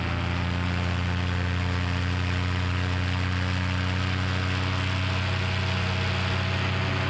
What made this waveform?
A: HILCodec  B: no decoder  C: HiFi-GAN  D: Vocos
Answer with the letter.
B